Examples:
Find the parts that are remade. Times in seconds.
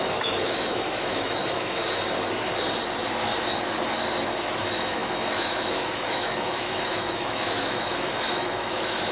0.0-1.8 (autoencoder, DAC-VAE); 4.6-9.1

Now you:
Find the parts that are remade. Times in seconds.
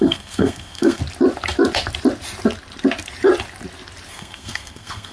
0.0-1.0 (codec, SNAC); 4.1-5.1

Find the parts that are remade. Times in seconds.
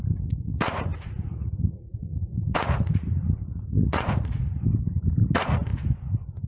0.0-5.7 (vocoder, Vocos)